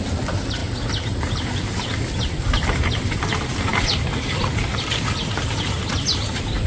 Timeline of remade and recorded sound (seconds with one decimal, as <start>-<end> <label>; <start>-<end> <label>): 0.0-6.7 recorded